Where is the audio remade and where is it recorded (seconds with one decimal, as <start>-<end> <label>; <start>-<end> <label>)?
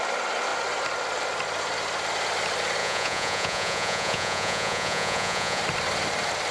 0.0-2.8 recorded; 2.8-5.6 remade; 5.6-6.5 recorded